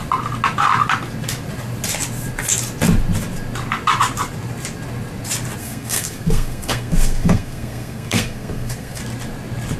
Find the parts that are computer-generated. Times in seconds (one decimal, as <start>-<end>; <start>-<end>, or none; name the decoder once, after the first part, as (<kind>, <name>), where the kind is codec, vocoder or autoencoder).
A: 5.6-9.0 (codec, SNAC)